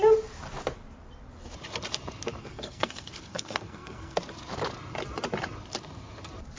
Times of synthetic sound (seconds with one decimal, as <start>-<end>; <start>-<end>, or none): 2.4-4.2